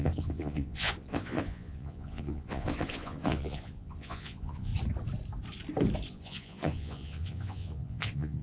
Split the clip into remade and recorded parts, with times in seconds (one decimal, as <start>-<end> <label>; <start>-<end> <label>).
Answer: 0.0-4.7 remade; 4.7-6.1 recorded; 6.1-8.4 remade